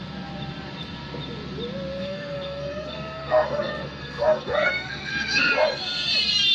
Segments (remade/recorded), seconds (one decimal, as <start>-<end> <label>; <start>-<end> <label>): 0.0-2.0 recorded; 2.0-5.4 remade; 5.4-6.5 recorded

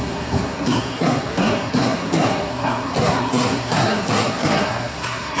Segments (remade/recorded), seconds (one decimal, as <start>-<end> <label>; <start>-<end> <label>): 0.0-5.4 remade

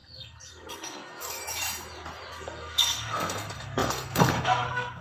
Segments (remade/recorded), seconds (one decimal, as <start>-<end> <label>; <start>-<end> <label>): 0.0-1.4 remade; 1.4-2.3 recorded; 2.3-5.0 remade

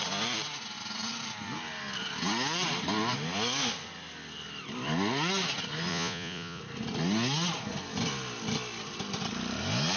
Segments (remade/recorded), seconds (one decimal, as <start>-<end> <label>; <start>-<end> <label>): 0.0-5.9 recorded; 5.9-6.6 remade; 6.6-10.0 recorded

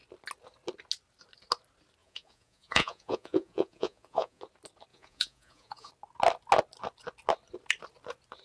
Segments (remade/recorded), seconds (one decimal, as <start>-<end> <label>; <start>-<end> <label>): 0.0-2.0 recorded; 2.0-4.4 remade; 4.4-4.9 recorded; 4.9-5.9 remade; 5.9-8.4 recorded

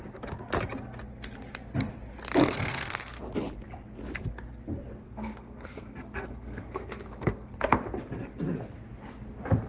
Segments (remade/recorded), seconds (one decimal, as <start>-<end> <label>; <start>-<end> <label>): 0.0-2.4 recorded; 2.4-3.2 remade; 3.2-5.0 recorded; 5.0-7.5 remade; 7.5-9.7 recorded

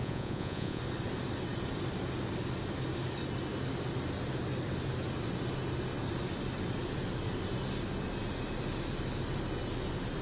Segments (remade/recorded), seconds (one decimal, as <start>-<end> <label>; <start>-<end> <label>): 0.0-0.8 remade; 0.8-10.2 recorded

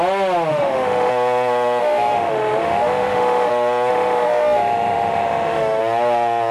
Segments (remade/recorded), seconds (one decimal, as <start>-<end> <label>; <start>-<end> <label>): 0.0-0.5 recorded; 0.5-1.1 remade; 1.1-1.8 recorded; 1.8-3.5 remade; 3.5-3.9 recorded; 3.9-5.8 remade; 5.8-6.5 recorded